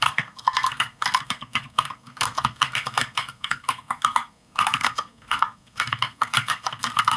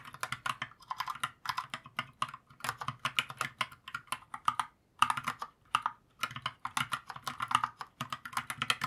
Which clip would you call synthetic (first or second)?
first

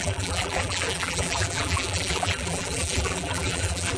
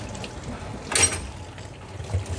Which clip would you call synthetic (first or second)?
first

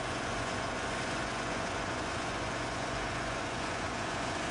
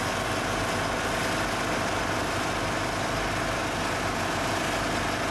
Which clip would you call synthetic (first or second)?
first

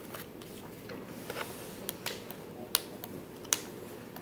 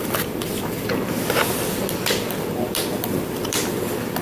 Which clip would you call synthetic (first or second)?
second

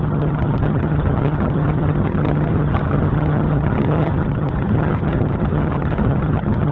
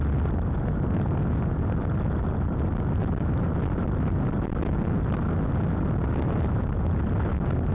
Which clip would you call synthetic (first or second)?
first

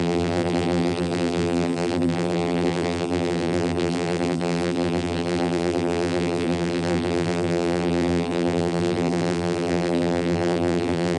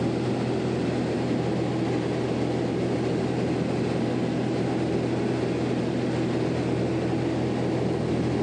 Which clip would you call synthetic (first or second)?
first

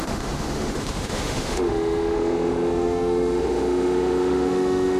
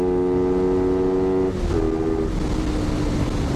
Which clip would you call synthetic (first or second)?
first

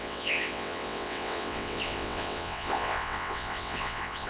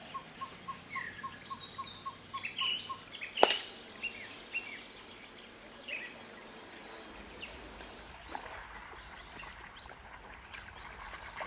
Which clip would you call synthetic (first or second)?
first